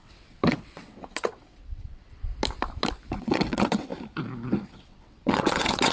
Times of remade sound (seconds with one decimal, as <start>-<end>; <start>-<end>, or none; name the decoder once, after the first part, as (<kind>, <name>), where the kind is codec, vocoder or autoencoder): 0.0-2.3 (vocoder, WaveNeXt); 3.2-3.9; 4.7-5.9